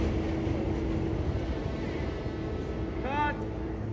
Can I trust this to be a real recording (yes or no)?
yes